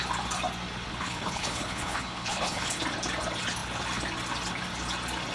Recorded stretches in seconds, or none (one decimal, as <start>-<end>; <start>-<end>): 0.0-0.9; 2.8-5.3